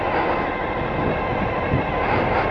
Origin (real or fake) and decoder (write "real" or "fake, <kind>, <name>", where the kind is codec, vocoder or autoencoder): real